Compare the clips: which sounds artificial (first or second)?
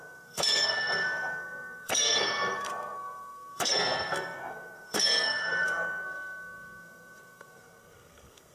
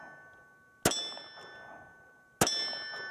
first